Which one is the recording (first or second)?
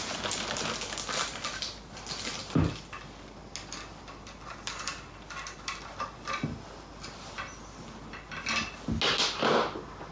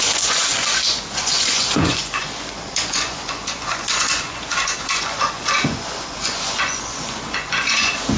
first